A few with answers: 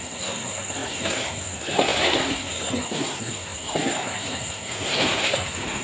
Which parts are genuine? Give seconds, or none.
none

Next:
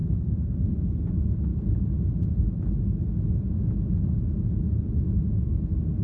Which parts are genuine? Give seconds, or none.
0.7-6.0